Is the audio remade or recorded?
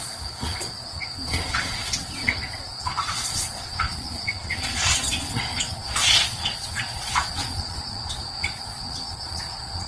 remade